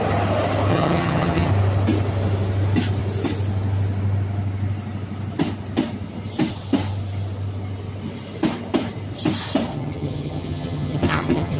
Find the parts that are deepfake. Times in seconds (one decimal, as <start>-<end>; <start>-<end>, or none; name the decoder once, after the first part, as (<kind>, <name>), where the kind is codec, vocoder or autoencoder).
0.7-1.5 (vocoder, HiFi-GAN); 9.7-11.6